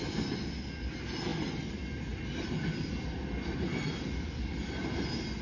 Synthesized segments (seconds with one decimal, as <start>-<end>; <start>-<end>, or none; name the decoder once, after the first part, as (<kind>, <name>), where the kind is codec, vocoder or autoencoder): none